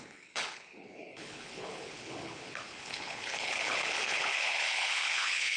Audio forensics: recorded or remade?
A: remade